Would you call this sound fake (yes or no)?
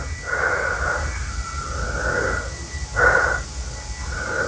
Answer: no